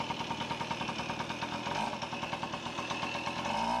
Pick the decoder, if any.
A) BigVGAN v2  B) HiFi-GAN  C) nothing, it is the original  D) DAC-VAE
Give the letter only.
C